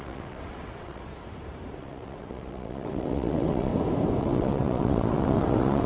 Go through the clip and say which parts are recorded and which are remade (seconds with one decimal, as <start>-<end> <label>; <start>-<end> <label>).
0.0-1.1 remade; 1.1-1.8 recorded; 1.8-3.7 remade; 3.7-4.2 recorded; 4.2-5.9 remade